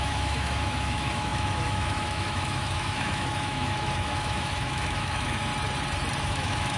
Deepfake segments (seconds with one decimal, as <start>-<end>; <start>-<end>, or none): 0.0-5.5; 6.2-6.8